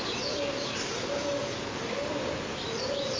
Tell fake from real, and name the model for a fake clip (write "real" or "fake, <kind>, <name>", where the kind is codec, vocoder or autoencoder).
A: fake, vocoder, BigVGAN v2